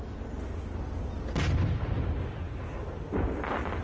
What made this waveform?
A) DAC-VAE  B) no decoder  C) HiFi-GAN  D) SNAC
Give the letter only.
B